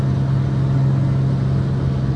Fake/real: real